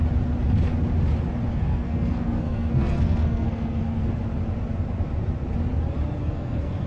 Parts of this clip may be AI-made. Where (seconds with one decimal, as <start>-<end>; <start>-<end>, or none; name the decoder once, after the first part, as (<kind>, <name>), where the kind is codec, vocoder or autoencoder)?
1.5-4.1 (codec, SNAC); 6.2-6.9